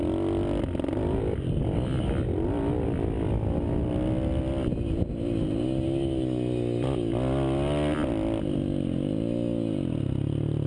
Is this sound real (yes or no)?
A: yes